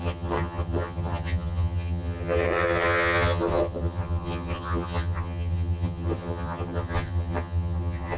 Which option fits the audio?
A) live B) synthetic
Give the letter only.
B